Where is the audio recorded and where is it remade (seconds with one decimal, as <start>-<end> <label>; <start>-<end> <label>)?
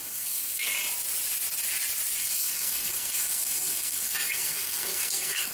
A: 0.0-0.8 remade; 0.8-2.2 recorded; 2.2-5.5 remade